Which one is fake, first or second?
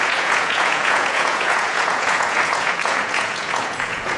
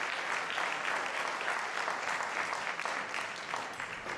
first